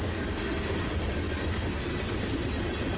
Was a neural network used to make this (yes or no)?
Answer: no